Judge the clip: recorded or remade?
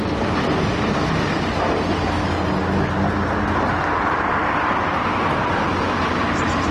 recorded